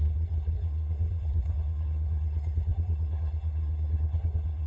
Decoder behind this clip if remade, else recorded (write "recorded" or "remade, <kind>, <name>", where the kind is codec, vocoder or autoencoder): remade, codec, SNAC